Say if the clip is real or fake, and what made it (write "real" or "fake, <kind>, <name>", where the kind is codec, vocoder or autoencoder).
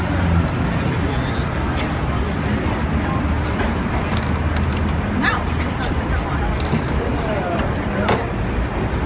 real